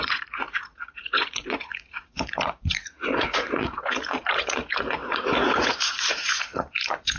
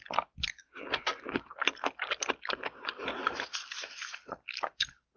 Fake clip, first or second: first